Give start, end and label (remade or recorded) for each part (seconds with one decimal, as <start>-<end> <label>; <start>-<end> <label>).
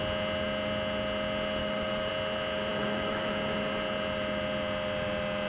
0.0-1.6 recorded; 1.6-2.1 remade; 2.1-2.7 recorded; 2.7-3.3 remade; 3.3-5.5 recorded